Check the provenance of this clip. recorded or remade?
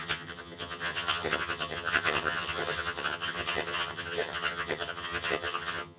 remade